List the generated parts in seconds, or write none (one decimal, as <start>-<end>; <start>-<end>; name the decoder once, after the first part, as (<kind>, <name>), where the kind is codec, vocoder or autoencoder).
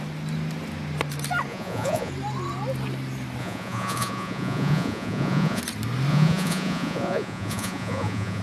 1.5-2.1 (vocoder, Vocos); 3.4-5.6; 6.1-8.4